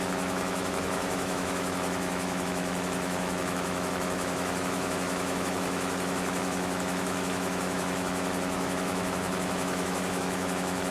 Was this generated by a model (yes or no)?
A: yes